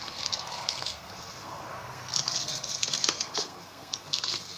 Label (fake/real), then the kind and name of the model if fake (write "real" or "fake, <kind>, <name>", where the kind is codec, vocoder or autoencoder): fake, codec, SNAC